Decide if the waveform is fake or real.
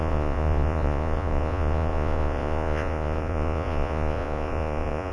fake